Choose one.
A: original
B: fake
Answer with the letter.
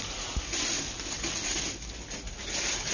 A